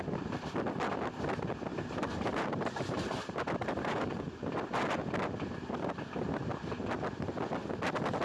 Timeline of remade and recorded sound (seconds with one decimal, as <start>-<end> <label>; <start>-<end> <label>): 0.0-1.7 recorded; 1.7-4.2 remade; 4.2-8.2 recorded